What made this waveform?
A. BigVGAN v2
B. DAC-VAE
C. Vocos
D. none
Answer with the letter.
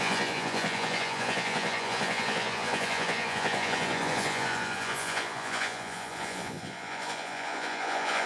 C